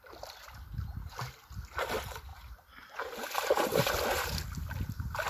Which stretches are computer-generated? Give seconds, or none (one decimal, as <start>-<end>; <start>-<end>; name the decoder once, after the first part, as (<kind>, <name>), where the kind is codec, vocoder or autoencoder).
2.3-3.9 (vocoder, BigVGAN v2)